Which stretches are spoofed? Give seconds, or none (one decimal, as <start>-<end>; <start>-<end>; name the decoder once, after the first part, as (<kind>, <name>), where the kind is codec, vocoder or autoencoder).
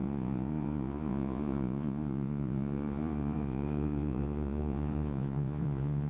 0.0-6.1 (vocoder, Vocos)